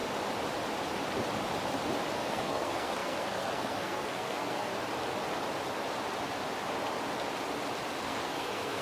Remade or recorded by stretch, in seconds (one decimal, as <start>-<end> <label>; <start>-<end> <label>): 0.0-2.1 recorded; 2.1-4.7 remade; 4.7-8.0 recorded; 8.0-8.8 remade